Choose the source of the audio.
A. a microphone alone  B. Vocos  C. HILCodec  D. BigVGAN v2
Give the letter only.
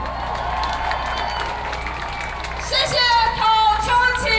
A